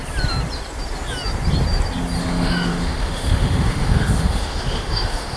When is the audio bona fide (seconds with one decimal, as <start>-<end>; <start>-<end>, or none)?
0.0-2.2